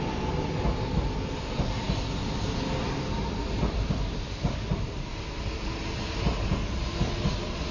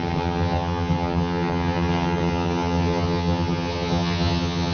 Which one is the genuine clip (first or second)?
first